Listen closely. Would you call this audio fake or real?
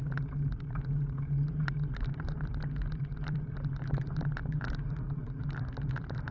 fake